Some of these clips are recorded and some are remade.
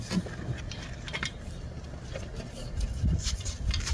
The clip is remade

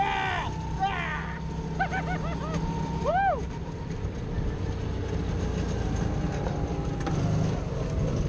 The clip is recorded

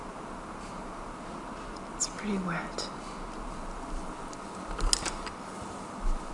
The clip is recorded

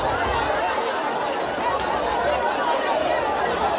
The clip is recorded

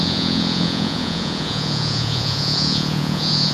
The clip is remade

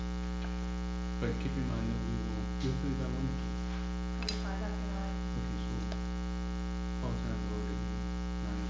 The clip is recorded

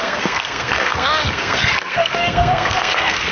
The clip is remade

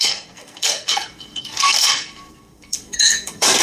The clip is remade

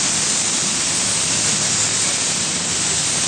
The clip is recorded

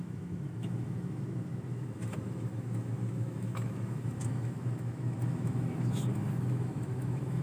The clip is remade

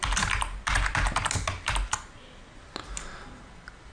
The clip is recorded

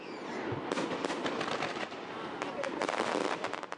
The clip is remade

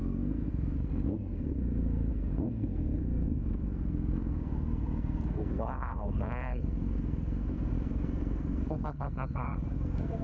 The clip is remade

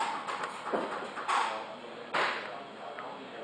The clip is recorded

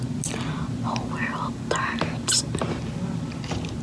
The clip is recorded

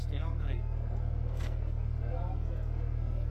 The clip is remade